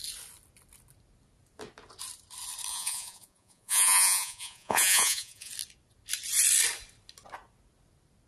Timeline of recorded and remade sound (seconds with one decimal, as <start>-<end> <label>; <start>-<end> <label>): 0.0-2.7 recorded; 2.7-5.5 remade; 5.5-8.3 recorded